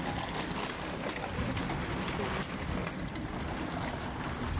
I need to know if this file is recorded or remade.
recorded